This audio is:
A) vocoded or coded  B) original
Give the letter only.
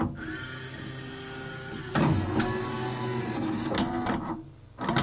B